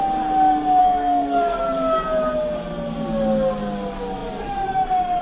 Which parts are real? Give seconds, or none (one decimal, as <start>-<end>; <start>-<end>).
0.0-0.8; 1.6-5.2